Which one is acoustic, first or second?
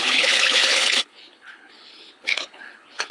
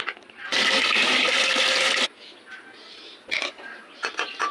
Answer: second